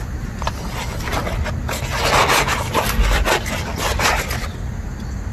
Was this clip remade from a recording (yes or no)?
no